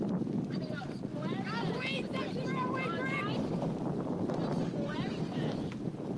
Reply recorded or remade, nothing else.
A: recorded